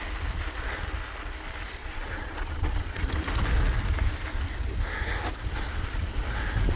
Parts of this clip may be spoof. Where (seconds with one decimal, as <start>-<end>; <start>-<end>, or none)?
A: 1.8-3.1